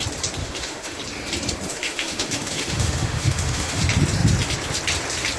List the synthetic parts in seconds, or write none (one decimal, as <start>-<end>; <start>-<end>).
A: 0.4-1.0; 1.7-3.8